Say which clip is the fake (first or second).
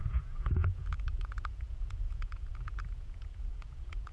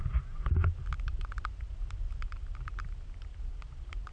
first